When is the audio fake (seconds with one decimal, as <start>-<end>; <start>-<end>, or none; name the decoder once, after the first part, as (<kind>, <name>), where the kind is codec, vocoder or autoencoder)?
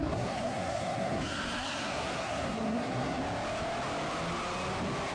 0.0-3.2 (codec, SNAC)